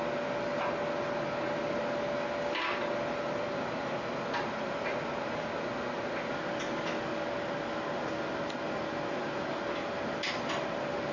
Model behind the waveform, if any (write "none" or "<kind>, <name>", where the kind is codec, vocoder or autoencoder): none